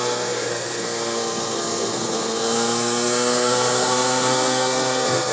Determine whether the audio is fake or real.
fake